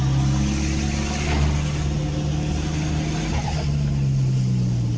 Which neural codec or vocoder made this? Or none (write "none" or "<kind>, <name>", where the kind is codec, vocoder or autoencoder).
none